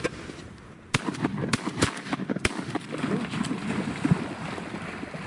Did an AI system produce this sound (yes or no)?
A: yes